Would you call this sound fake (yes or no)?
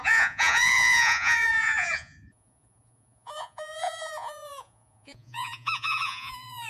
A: yes